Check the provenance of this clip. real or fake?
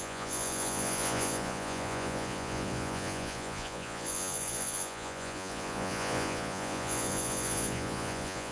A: fake